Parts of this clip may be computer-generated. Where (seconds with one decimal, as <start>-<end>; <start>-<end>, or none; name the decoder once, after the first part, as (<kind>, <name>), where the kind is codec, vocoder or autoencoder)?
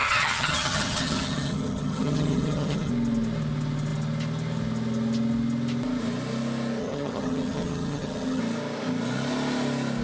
0.0-2.9 (vocoder, HiFi-GAN); 6.8-8.4